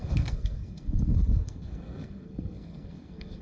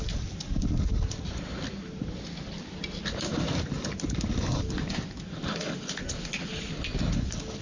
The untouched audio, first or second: second